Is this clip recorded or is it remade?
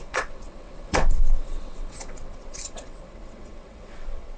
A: remade